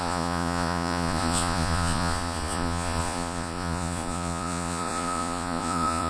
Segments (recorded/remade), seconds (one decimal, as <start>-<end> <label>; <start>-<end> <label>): 0.0-6.1 remade